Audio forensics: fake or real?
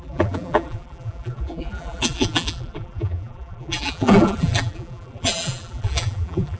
fake